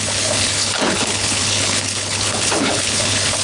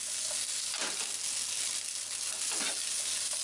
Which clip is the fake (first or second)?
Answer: first